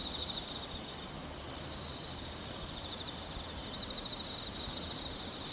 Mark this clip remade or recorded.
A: recorded